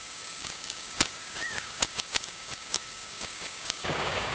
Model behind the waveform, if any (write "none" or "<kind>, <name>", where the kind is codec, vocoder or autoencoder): codec, DAC